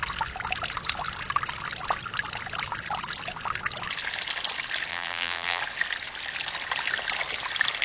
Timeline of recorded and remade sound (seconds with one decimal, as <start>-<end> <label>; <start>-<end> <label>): 0.0-4.9 recorded; 4.9-5.6 remade; 5.6-7.8 recorded